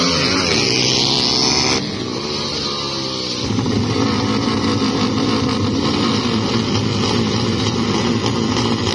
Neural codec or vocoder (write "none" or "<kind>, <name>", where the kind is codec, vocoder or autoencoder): none